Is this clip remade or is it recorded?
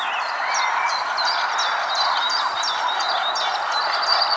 recorded